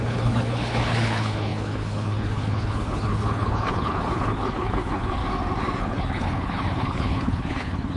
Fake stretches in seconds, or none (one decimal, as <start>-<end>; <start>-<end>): 0.0-5.2; 5.8-8.0